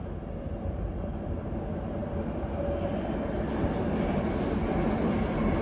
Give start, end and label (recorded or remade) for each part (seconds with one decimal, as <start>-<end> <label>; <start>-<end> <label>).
0.0-5.6 recorded